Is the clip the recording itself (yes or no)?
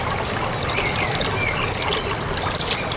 yes